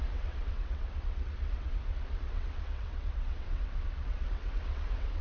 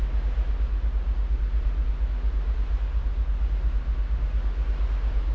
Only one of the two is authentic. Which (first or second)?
second